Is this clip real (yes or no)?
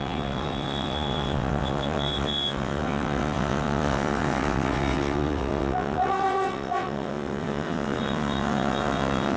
no